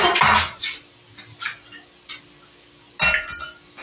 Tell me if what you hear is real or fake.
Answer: real